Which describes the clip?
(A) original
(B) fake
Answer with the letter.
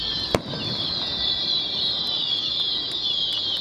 A